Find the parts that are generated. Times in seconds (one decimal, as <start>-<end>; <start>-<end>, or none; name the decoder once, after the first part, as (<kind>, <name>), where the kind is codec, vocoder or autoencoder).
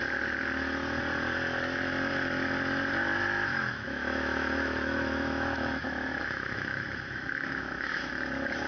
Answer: 3.5-8.1 (autoencoder, DAC-VAE)